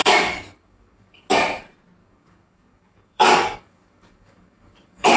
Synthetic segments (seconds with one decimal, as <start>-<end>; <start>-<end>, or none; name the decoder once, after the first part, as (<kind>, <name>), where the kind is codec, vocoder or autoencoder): 0.0-1.3 (codec, DAC); 2.0-5.2